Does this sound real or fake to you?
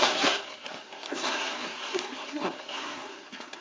fake